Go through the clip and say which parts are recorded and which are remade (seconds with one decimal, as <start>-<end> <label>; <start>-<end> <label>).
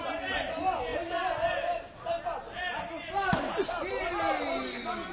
0.0-5.1 recorded